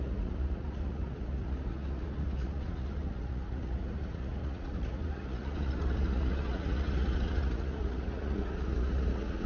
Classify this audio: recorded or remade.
remade